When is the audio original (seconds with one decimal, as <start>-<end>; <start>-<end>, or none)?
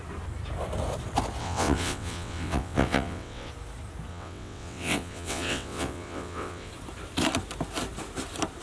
0.0-1.4; 3.5-4.1; 6.7-8.6